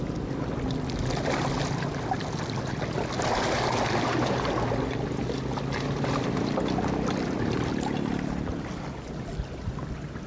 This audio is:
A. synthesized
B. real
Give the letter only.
B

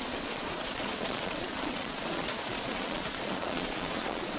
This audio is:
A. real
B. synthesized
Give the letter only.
B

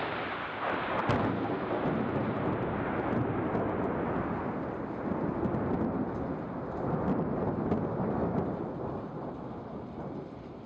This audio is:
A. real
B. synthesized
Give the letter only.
A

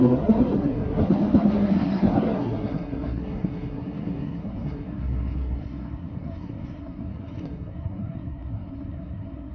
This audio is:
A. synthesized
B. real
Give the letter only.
A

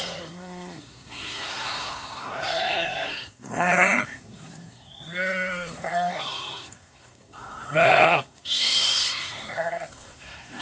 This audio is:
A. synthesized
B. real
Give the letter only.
A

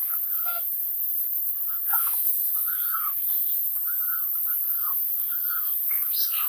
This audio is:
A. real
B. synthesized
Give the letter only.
B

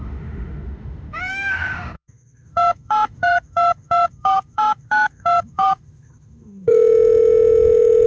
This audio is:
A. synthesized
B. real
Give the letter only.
A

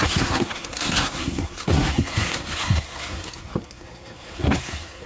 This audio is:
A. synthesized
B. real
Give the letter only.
A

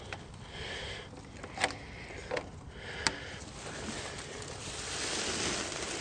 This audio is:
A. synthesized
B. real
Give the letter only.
B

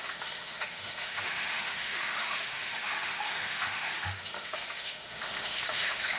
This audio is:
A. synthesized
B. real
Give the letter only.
A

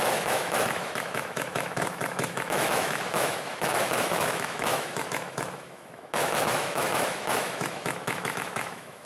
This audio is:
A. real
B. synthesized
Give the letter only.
B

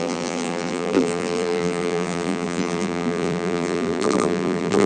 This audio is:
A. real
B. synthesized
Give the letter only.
B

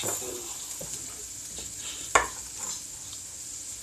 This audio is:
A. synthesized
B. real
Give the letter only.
B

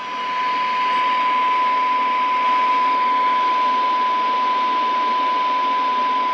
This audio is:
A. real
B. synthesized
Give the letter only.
A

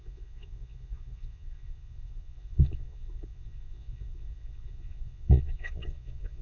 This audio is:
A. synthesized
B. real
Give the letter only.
A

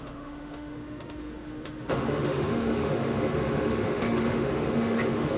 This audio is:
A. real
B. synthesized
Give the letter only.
B